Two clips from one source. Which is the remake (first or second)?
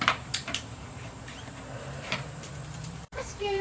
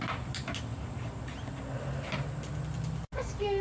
first